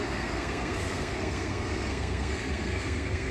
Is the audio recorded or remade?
remade